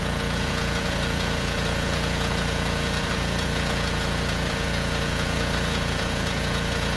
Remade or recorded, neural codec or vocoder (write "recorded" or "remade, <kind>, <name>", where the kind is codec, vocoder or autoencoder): remade, vocoder, Vocos